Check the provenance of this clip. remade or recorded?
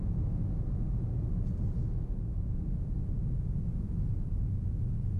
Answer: remade